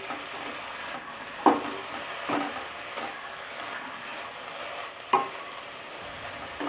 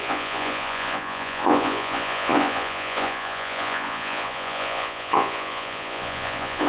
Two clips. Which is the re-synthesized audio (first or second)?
second